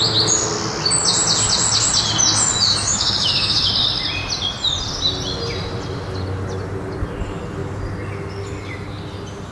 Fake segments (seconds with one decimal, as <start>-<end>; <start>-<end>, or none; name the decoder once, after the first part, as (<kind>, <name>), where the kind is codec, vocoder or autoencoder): 2.7-3.7 (autoencoder, DAC-VAE)